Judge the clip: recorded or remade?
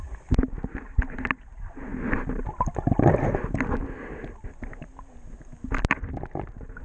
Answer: recorded